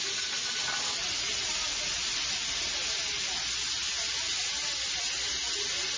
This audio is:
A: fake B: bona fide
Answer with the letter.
B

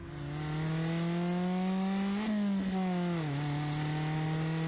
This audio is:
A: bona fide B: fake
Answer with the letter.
A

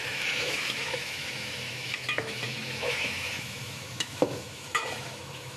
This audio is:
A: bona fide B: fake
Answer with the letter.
B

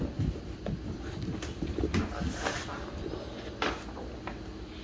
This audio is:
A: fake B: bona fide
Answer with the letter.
B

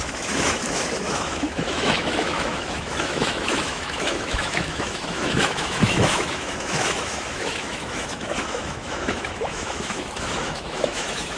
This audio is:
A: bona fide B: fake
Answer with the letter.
B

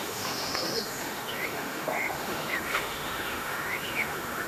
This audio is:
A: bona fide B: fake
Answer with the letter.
B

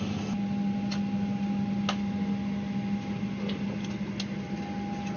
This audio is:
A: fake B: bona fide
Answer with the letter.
B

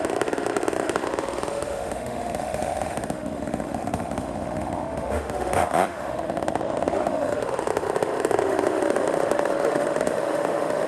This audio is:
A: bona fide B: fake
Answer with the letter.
B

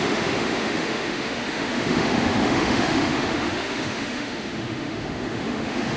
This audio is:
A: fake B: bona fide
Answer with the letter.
A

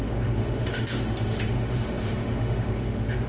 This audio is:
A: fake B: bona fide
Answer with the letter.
A